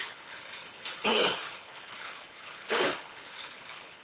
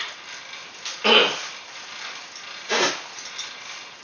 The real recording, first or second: second